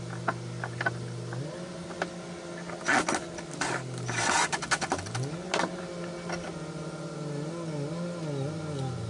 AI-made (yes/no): no